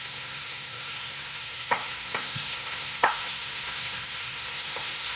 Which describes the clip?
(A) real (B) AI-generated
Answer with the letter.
B